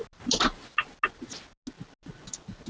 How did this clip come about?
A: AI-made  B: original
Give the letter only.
B